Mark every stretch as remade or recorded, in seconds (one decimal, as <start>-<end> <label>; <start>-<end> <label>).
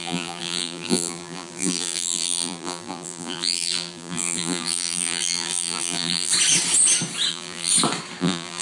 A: 0.0-6.3 remade; 6.3-7.3 recorded; 7.3-7.7 remade; 7.7-8.2 recorded; 8.2-8.6 remade